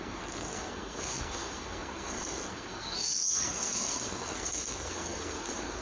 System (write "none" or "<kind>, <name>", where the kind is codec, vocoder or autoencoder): codec, SNAC